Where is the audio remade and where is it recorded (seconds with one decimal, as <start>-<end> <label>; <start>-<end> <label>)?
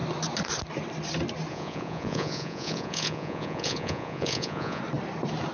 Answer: 0.0-1.5 recorded; 1.5-4.8 remade; 4.8-5.5 recorded